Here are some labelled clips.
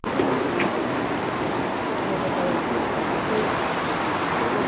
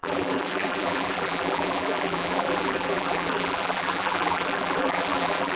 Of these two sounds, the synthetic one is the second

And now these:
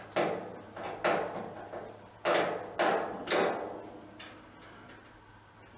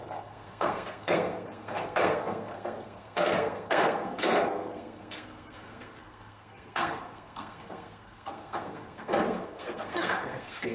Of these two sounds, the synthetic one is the second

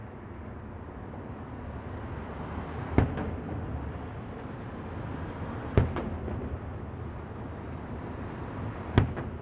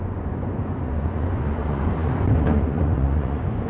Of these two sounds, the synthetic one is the second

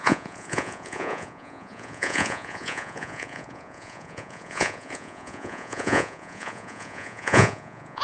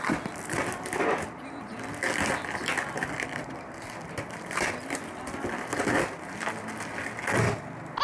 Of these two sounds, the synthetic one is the first